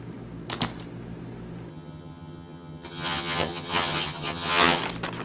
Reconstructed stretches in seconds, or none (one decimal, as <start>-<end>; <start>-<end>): 1.7-4.8